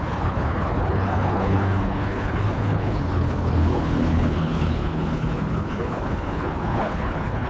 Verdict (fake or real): fake